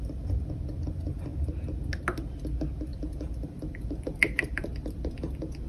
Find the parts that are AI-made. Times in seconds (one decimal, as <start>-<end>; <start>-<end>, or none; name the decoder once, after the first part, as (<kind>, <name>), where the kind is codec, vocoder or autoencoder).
2.9-5.7 (vocoder, BigVGAN v2)